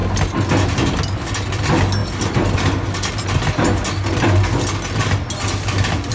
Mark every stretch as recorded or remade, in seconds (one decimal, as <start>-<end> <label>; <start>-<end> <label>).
0.0-6.1 recorded